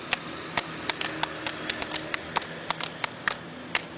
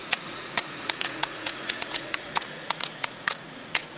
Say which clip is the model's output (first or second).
second